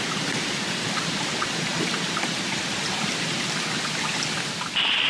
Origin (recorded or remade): recorded